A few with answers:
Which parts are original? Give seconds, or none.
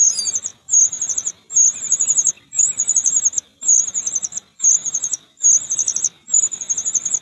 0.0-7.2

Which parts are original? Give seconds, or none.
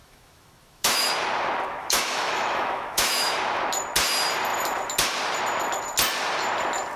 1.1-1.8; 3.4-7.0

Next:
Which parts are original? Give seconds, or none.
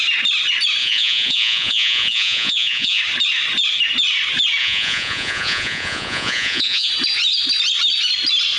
0.0-0.8; 3.0-4.6; 6.9-8.6